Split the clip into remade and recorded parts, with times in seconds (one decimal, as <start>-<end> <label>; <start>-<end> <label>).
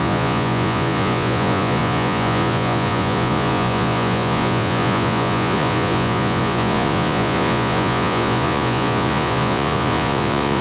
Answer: 0.0-10.6 remade